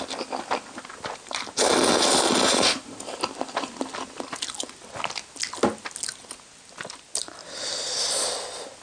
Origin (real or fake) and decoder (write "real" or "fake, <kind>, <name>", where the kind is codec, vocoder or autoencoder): real